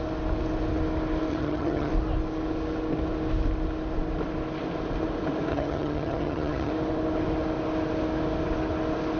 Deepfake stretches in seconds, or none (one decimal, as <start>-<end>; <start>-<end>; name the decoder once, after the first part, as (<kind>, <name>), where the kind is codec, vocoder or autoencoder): 1.3-1.9 (vocoder, HiFi-GAN); 5.5-6.7